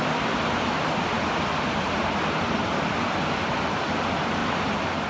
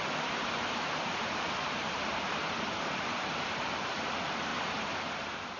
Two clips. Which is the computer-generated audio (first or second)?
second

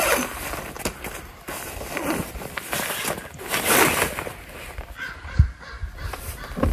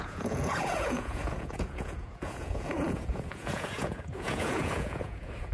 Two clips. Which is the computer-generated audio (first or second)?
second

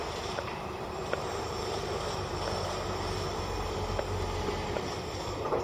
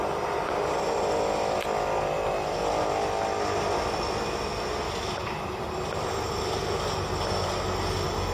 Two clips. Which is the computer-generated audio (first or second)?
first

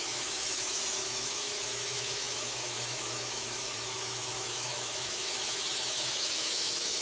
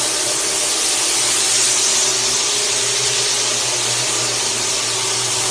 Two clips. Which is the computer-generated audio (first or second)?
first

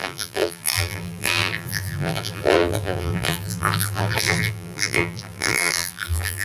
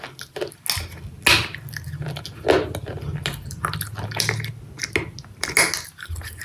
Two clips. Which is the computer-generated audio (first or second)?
first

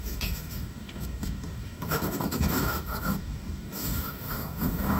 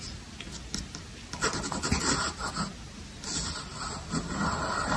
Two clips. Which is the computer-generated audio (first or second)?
first